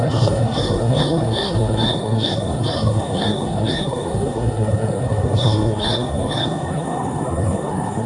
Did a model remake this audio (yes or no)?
yes